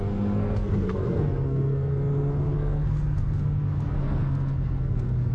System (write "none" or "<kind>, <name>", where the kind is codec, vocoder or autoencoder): codec, SNAC